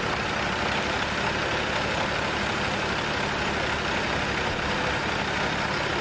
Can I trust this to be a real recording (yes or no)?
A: yes